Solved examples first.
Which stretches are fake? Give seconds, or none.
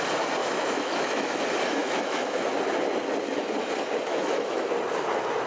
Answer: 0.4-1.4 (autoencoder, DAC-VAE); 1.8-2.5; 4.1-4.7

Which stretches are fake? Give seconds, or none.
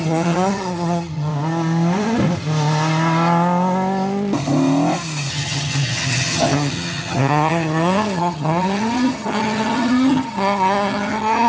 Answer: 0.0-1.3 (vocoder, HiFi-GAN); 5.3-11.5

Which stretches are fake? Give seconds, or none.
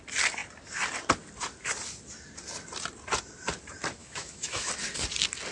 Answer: 4.0-4.7 (autoencoder, DAC-VAE)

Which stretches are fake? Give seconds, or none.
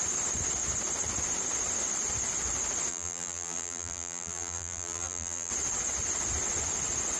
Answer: 2.9-5.5 (vocoder, BigVGAN v2)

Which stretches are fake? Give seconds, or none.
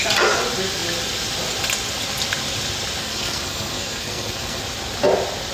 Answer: 3.0-4.6 (codec, SNAC)